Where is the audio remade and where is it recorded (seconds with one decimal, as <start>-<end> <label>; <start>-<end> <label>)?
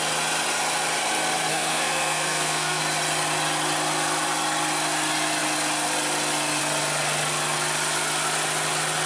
0.0-1.5 recorded; 1.5-2.8 remade; 2.8-9.1 recorded